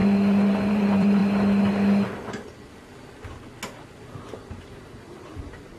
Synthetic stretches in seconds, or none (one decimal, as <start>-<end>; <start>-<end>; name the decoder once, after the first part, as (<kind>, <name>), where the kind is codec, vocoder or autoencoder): 0.7-1.2 (vocoder, BigVGAN v2); 4.0-5.8